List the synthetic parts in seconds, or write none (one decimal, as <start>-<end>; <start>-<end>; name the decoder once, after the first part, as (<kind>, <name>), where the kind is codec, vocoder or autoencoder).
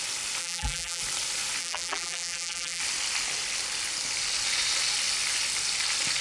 0.4-1.0 (vocoder, BigVGAN v2); 1.6-2.8